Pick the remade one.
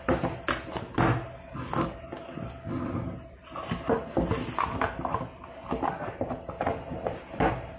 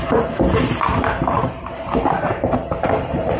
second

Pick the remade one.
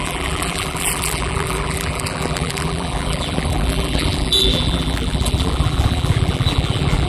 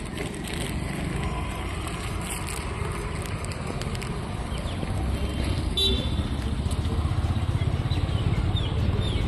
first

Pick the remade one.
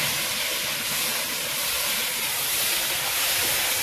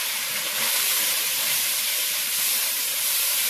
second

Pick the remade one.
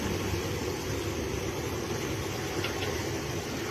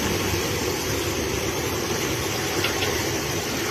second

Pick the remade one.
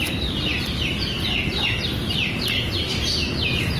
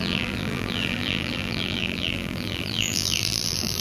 second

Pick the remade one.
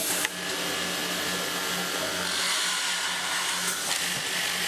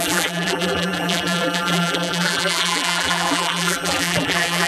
second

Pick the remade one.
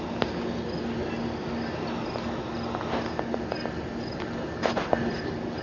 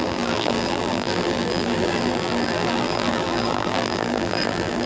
second